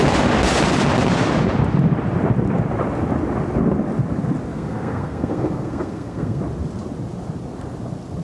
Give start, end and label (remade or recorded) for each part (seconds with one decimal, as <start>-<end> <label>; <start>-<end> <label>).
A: 0.0-4.5 recorded; 4.5-6.4 remade; 6.4-8.2 recorded